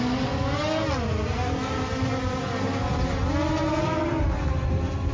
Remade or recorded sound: recorded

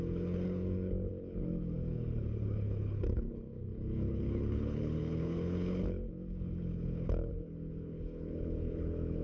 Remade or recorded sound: remade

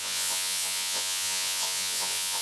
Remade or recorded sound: remade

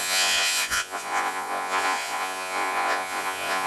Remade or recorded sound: remade